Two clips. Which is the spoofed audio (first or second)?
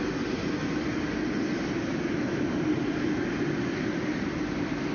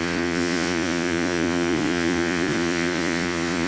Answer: second